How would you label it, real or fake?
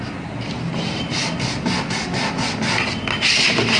real